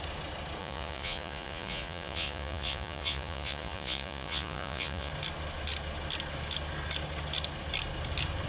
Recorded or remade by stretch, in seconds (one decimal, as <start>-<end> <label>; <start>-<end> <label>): 0.0-0.6 recorded; 0.6-5.1 remade; 5.1-8.5 recorded